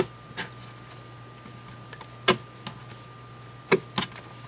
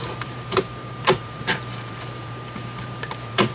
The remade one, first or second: second